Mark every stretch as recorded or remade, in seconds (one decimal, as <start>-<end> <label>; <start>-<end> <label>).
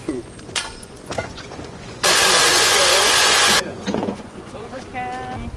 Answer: 0.0-4.9 remade; 4.9-5.6 recorded